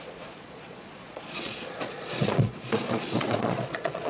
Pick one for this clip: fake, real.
fake